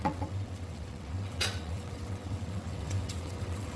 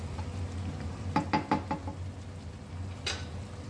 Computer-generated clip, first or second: first